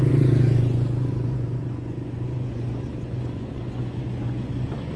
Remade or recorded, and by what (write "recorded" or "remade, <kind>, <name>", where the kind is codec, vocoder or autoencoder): remade, vocoder, Vocos